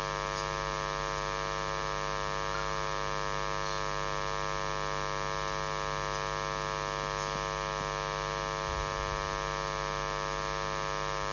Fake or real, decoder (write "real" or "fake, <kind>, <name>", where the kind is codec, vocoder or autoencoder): real